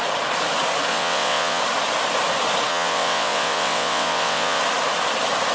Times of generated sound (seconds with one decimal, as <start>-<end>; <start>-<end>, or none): 0.9-1.6; 2.7-4.6